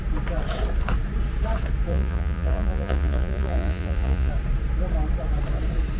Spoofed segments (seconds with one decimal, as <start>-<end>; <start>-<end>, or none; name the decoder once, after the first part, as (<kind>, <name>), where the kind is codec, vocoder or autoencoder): 1.9-4.3 (vocoder, Vocos)